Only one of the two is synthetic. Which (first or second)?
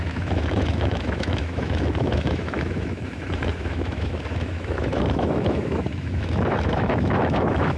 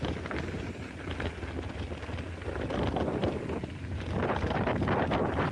first